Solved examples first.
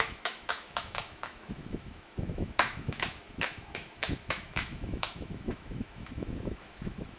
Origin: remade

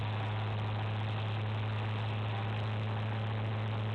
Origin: recorded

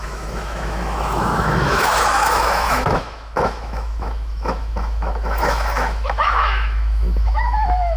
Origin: remade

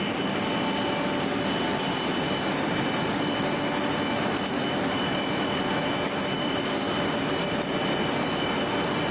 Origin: recorded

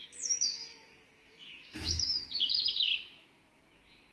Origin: remade